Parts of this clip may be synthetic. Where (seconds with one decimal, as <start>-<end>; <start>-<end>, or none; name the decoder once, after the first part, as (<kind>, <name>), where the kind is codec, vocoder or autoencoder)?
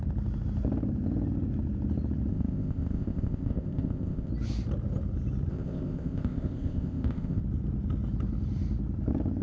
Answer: 2.3-4.3 (codec, ZipCodec); 5.5-7.4